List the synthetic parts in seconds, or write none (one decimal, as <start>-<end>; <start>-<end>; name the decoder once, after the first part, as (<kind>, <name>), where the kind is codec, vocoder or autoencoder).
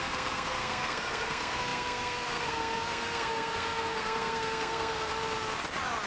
0.0-5.1 (codec, SNAC)